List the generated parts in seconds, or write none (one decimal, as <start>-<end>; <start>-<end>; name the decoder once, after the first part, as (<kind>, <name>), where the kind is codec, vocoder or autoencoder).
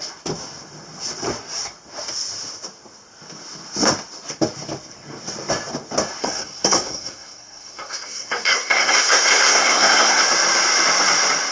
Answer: 6.2-10.2 (codec, SNAC)